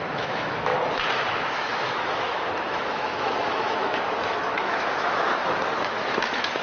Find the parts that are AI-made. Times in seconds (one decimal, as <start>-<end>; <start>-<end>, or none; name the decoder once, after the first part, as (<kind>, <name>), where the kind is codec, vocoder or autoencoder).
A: 0.0-0.7 (autoencoder, DAC-VAE); 1.3-6.6